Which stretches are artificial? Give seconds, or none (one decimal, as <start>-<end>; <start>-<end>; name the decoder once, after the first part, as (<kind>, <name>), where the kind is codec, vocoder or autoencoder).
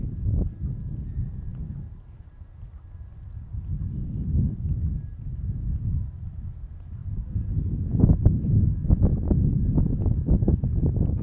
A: none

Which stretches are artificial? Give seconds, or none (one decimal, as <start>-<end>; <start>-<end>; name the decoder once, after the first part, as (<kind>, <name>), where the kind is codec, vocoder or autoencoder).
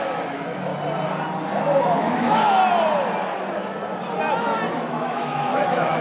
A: 0.0-0.7 (autoencoder, DAC-VAE); 1.8-2.6; 4.7-6.0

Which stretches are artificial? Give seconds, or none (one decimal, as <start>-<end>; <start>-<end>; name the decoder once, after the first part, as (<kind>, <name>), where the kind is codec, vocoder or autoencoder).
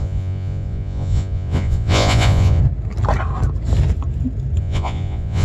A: 0.0-2.6 (vocoder, Vocos); 4.6-5.4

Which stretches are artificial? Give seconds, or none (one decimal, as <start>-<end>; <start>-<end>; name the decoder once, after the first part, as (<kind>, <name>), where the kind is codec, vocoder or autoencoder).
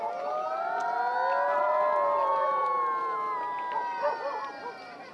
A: none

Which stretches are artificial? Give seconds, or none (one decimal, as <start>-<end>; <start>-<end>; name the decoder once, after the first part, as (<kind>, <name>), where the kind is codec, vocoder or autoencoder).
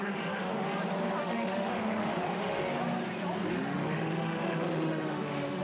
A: 0.0-0.5 (autoencoder, DAC-VAE); 1.2-2.7; 3.5-5.6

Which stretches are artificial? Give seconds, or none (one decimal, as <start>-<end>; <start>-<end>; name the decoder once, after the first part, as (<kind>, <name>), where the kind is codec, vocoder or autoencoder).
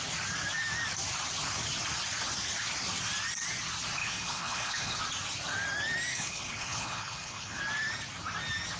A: 4.0-5.0 (codec, HILCodec); 6.1-7.6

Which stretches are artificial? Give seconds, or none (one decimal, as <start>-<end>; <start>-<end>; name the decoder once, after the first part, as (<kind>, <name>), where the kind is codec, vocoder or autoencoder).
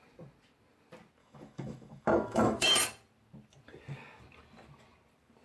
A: 1.2-2.8 (autoencoder, DAC-VAE)